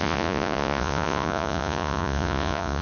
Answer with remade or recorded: remade